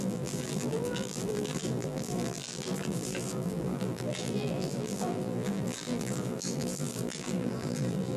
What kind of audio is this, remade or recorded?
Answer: remade